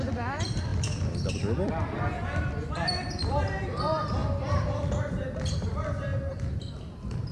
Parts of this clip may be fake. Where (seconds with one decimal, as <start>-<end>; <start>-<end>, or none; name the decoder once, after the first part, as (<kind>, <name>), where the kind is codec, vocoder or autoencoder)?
0.0-6.1 (vocoder, BigVGAN v2)